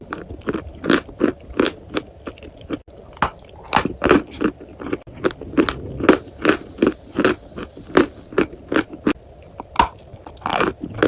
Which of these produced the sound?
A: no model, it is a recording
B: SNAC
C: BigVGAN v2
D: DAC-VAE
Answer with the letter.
A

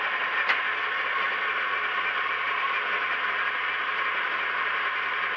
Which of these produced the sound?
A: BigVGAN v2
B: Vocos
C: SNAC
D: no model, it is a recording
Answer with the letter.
D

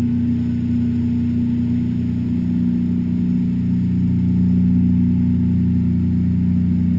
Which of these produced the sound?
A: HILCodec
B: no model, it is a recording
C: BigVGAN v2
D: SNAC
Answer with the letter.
B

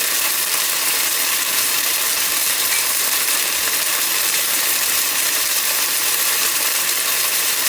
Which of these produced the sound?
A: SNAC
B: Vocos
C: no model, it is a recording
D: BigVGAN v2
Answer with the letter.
D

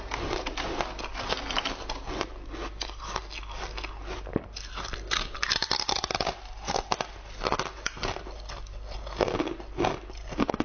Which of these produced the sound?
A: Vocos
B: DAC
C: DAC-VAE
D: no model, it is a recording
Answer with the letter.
D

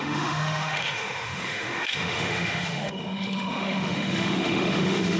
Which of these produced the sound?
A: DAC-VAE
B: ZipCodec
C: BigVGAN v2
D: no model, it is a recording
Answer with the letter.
A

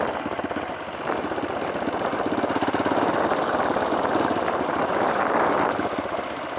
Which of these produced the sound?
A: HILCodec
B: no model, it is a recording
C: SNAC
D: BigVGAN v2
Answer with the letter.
B